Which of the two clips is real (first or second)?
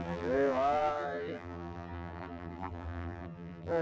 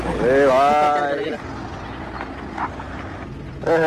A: second